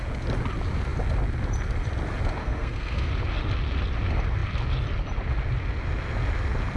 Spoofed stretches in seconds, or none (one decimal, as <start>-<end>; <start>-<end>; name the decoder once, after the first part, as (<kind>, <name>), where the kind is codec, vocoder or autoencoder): 2.4-3.1 (codec, SNAC)